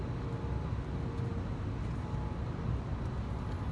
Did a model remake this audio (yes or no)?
no